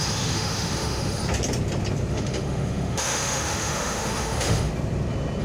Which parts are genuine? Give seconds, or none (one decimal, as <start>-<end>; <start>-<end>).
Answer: 1.2-2.1; 4.7-5.4